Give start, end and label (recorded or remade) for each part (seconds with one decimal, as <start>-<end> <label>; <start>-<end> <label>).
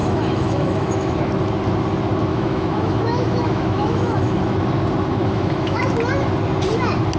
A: 0.0-1.3 remade; 1.3-2.3 recorded; 2.3-4.4 remade; 4.4-5.2 recorded; 5.2-5.8 remade; 5.8-7.2 recorded